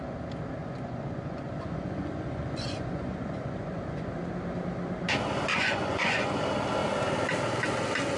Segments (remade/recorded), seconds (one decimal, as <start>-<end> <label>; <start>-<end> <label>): 0.0-0.6 recorded; 0.6-4.2 remade; 4.2-5.5 recorded; 5.5-6.3 remade; 6.3-8.2 recorded